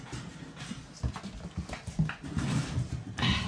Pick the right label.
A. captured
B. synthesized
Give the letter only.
A